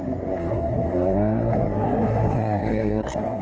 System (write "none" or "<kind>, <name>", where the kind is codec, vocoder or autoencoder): codec, SNAC